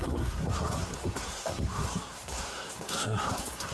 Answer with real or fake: fake